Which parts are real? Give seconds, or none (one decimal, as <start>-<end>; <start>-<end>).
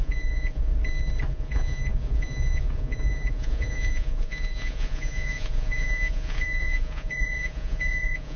0.7-1.3